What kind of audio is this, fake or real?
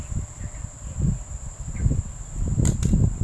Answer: real